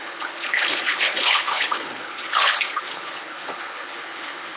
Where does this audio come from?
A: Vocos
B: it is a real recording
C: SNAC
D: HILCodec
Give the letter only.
D